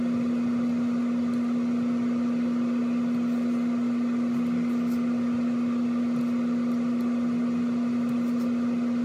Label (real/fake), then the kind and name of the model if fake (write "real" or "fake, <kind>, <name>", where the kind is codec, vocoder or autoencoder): real